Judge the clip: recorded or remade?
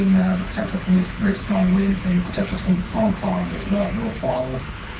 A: remade